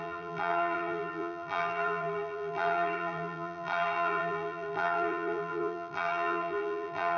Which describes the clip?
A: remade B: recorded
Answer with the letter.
A